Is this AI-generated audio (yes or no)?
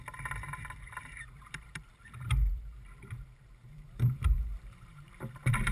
yes